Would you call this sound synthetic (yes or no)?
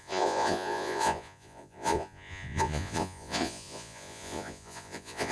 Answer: yes